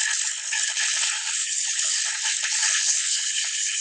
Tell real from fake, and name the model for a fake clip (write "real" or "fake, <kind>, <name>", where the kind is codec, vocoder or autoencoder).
fake, codec, HILCodec